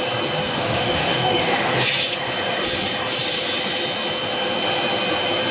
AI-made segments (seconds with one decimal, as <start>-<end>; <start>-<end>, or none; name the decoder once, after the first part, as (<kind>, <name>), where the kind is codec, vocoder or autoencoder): 0.4-1.7 (autoencoder, DAC-VAE)